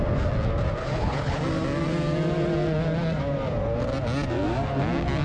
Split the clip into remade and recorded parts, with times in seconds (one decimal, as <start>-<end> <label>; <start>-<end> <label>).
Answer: 0.0-0.8 recorded; 0.8-1.4 remade; 1.4-5.2 recorded